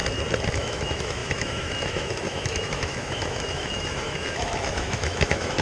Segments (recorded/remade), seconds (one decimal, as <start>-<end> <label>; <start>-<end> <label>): 0.0-0.5 recorded; 0.5-5.6 remade